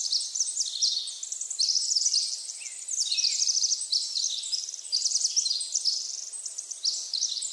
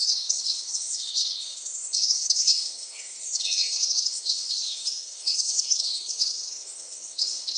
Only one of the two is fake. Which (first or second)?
second